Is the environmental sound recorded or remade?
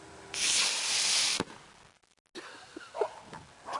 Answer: recorded